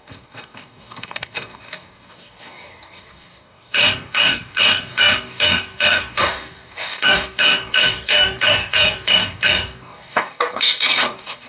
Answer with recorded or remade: remade